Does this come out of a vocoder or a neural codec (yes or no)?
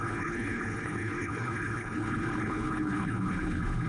yes